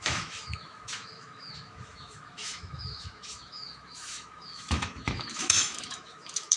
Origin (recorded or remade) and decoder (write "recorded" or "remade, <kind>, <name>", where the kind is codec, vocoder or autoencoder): remade, autoencoder, DAC-VAE